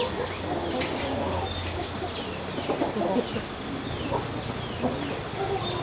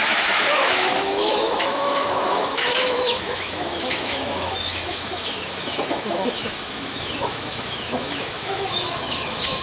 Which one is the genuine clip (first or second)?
first